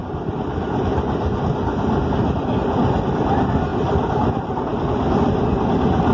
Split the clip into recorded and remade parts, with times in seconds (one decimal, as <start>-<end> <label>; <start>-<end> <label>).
0.0-6.1 recorded